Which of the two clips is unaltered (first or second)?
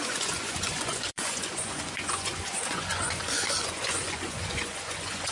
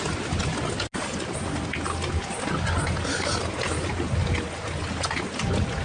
second